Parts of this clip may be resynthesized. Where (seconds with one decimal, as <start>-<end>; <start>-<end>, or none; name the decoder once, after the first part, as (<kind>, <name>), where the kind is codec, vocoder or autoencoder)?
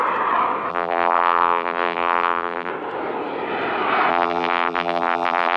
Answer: 0.7-2.7 (vocoder, BigVGAN v2); 4.1-5.6